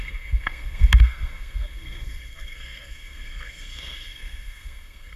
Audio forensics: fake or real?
fake